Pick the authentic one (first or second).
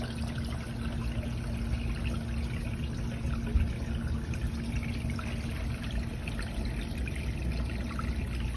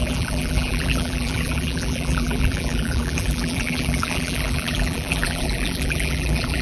first